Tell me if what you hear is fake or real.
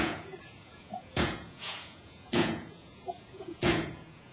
fake